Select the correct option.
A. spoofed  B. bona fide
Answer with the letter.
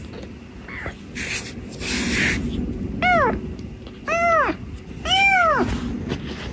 B